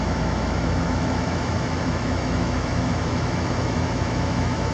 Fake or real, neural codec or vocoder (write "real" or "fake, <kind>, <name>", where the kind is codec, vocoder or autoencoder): fake, autoencoder, DAC-VAE